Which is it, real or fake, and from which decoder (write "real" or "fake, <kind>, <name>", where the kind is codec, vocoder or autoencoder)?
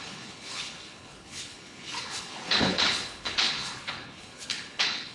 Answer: fake, codec, HILCodec